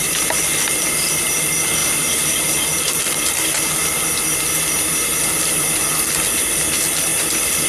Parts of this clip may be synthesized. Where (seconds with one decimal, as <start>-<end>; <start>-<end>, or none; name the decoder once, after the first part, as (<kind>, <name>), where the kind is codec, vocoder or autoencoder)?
1.8-3.0 (vocoder, BigVGAN v2)